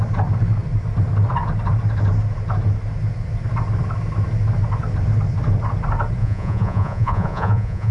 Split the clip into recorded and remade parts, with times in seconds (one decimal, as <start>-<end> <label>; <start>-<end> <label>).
0.0-6.2 recorded; 6.2-7.9 remade